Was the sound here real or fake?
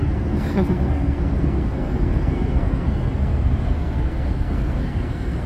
fake